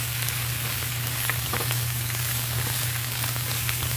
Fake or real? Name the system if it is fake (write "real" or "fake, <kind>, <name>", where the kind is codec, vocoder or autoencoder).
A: fake, codec, DAC